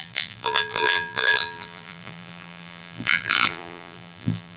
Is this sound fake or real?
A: fake